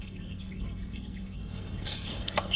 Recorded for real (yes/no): no